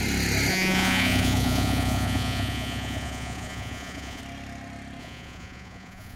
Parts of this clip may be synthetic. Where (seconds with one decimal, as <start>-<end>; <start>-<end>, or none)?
0.5-4.2; 5.0-6.2